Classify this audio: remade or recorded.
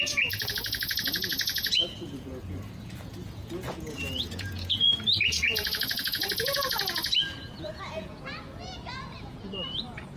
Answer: remade